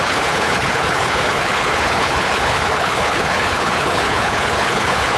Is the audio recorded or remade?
remade